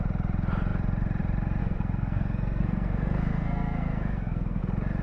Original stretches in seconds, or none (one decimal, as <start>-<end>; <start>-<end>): 0.0-1.6; 4.6-5.0